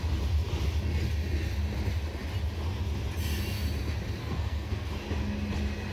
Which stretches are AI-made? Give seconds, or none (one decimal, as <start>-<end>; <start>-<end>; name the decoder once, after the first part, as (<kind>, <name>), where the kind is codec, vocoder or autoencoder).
4.2-4.9 (codec, SNAC)